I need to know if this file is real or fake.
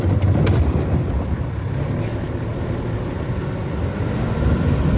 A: real